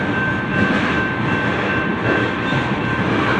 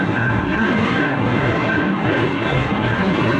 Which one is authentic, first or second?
first